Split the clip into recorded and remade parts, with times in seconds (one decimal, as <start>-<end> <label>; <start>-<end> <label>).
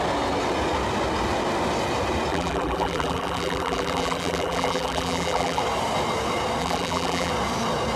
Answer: 0.0-2.3 recorded; 2.3-5.6 remade; 5.6-6.6 recorded; 6.6-7.3 remade; 7.3-8.0 recorded